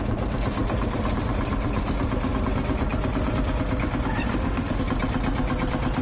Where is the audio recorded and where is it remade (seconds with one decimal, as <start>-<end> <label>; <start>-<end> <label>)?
0.0-4.3 recorded; 4.3-4.8 remade; 4.8-6.0 recorded